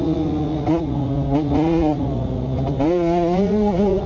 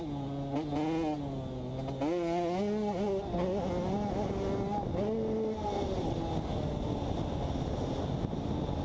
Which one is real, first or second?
second